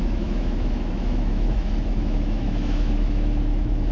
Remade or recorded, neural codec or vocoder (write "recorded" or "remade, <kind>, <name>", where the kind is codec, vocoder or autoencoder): remade, autoencoder, DAC-VAE